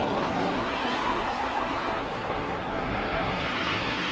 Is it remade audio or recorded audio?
remade